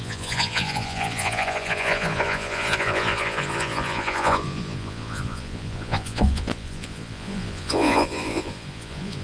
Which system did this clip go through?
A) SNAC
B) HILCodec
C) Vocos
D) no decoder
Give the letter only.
C